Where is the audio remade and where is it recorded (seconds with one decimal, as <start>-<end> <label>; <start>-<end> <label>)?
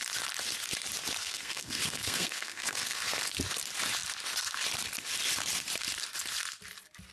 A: 0.0-1.2 recorded; 1.2-3.3 remade; 3.3-7.1 recorded